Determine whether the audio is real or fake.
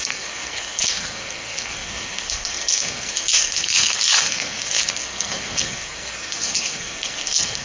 fake